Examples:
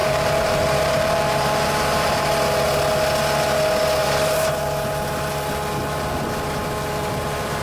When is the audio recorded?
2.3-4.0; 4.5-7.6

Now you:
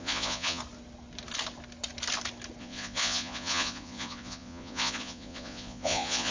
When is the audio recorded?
0.6-2.6